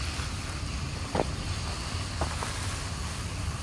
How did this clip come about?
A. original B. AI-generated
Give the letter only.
A